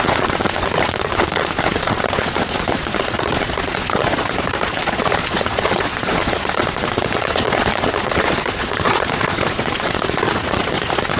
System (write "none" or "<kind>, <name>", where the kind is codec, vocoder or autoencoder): vocoder, Vocos